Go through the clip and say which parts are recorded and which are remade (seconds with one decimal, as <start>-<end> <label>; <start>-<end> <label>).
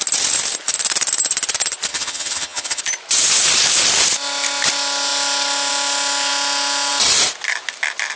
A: 0.0-1.9 recorded; 1.9-2.8 remade; 2.8-8.2 recorded